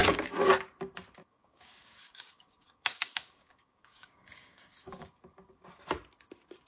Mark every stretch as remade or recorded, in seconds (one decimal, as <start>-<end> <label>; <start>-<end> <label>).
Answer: 0.0-0.5 remade; 0.5-1.2 recorded; 1.2-5.2 remade; 5.2-6.7 recorded